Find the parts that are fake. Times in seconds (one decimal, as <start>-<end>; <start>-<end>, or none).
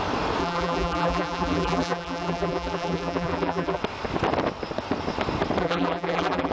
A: 0.4-3.8; 5.6-6.5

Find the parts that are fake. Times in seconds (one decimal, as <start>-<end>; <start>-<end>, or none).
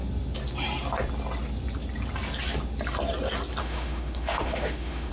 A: 3.6-5.1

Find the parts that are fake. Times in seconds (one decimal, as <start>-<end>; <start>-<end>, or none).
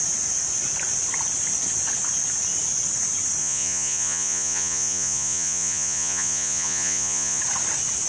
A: 3.4-7.4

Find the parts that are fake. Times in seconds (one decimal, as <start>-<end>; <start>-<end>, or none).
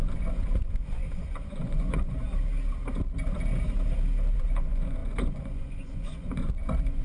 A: 0.0-2.3; 4.3-7.0